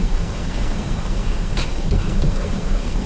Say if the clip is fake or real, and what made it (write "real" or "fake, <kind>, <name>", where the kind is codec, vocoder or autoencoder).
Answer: fake, codec, SNAC